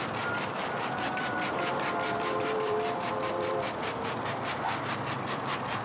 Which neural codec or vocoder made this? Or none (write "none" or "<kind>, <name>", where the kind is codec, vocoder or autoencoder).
vocoder, BigVGAN v2